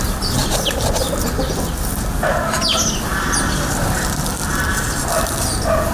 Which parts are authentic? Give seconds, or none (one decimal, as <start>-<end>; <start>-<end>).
0.0-5.9